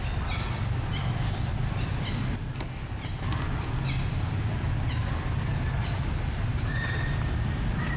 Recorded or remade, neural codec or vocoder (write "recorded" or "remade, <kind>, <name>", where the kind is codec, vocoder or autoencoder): recorded